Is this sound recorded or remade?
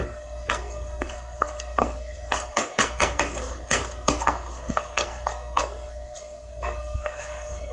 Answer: remade